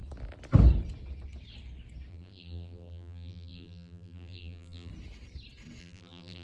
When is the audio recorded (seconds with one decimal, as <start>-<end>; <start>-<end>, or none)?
0.0-2.1; 4.9-5.8